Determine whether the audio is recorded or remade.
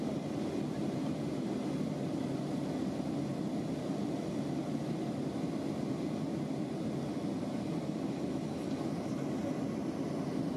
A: recorded